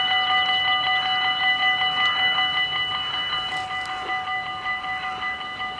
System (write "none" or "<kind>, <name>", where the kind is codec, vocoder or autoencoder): none